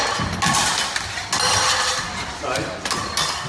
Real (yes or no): yes